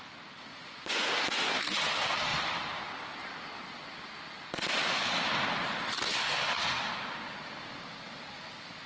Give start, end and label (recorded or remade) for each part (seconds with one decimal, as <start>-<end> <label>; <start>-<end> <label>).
0.0-0.5 recorded; 0.5-1.1 remade; 1.1-8.9 recorded